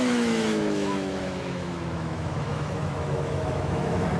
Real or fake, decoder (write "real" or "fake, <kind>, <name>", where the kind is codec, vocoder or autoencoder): fake, autoencoder, DAC-VAE